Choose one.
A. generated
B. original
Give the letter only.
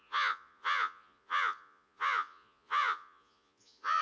A